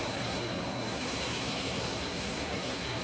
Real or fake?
fake